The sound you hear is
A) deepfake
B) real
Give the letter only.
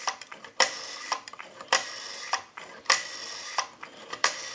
A